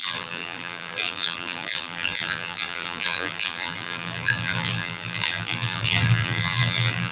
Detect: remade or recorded remade